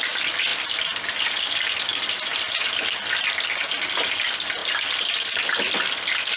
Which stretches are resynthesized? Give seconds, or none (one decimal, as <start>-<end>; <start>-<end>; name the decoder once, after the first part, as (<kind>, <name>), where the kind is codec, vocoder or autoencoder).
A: 0.0-0.5 (vocoder, BigVGAN v2); 1.9-2.3; 4.0-4.6